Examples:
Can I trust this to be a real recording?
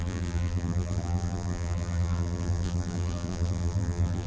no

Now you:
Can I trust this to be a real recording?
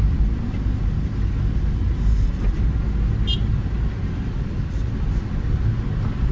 yes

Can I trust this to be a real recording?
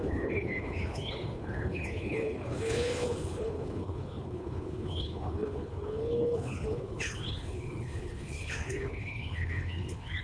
no